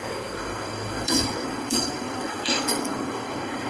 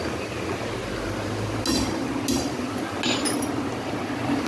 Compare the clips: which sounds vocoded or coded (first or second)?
first